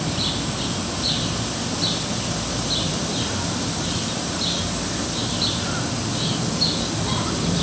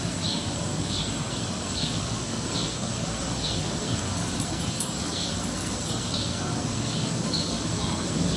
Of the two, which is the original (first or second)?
first